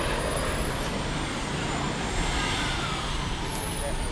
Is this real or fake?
real